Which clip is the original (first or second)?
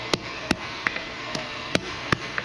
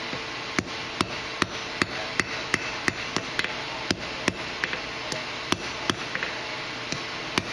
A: second